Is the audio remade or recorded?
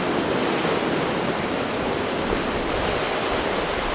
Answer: remade